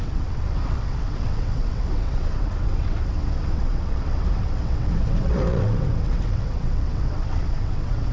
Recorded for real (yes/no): no